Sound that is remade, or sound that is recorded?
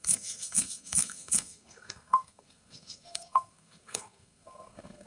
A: remade